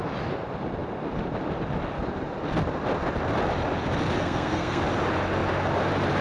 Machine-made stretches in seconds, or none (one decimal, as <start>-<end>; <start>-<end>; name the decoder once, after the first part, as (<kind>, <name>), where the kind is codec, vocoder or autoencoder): 4.2-4.8 (codec, SNAC)